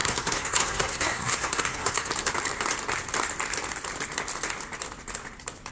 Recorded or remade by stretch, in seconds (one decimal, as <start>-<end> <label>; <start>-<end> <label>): 0.0-2.1 remade; 2.1-5.7 recorded